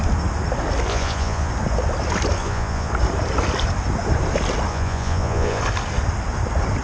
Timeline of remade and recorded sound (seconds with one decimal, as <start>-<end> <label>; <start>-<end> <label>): 0.0-0.9 recorded; 0.9-1.5 remade; 1.5-2.4 recorded; 2.4-2.9 remade; 2.9-4.7 recorded; 4.7-5.6 remade; 5.6-6.8 recorded